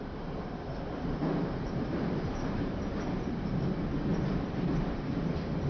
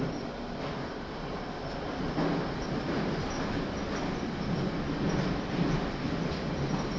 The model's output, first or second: first